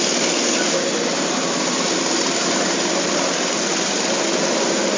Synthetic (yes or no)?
no